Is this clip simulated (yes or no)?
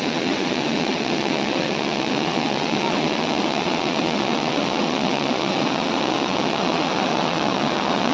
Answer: yes